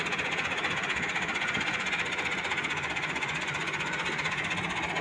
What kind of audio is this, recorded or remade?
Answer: remade